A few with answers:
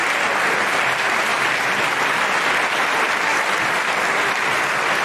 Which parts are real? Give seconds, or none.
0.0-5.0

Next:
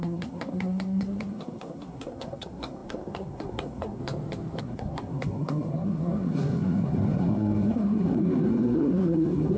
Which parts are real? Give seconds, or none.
4.0-4.6

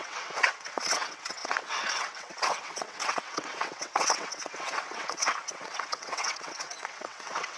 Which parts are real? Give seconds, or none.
none

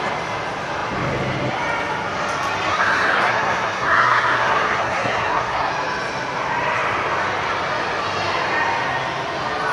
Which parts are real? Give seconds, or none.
0.0-2.7; 5.7-9.7

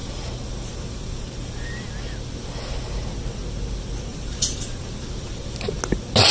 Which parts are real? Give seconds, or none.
1.9-4.1; 5.7-6.3

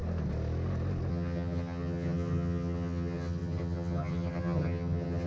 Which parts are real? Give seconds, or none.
0.0-1.1

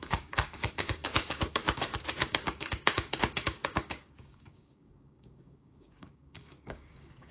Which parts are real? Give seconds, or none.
none

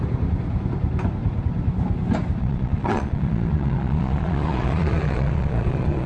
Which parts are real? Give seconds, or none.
0.0-2.4